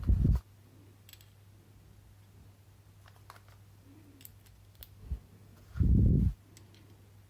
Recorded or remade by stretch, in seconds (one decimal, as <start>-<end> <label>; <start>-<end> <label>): 0.0-5.4 recorded; 5.4-6.1 remade; 6.1-7.3 recorded